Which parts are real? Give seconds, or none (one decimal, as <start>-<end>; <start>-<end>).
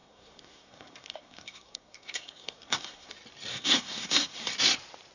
3.1-3.5; 4.5-5.1